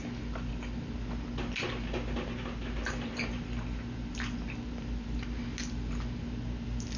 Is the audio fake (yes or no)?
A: no